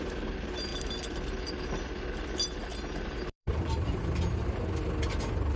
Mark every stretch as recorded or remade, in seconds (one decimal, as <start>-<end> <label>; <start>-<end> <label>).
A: 0.0-2.7 recorded; 2.7-4.0 remade; 4.0-5.6 recorded